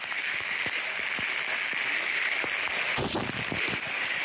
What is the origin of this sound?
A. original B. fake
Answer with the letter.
A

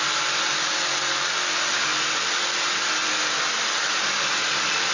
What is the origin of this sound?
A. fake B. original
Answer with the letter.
B